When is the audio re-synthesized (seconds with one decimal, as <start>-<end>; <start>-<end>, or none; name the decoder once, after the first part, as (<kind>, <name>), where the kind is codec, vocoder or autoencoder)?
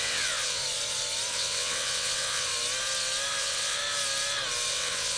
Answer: 0.0-0.6 (vocoder, WaveNeXt); 1.3-2.5; 3.4-3.8; 4.7-5.2